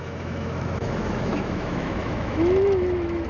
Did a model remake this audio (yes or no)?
yes